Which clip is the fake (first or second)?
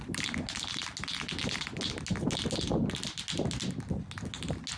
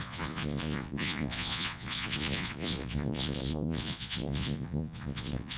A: second